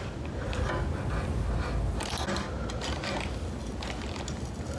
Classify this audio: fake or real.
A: real